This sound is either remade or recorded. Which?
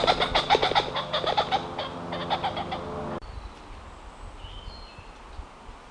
recorded